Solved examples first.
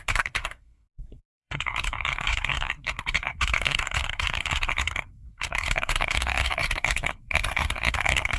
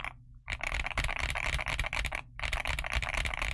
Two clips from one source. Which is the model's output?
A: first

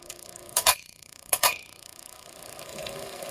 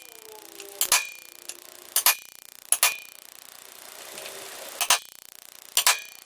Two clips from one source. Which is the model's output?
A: first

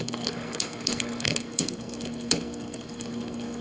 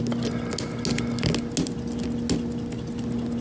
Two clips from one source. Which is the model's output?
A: first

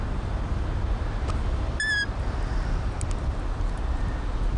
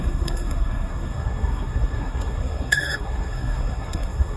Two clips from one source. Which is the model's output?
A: second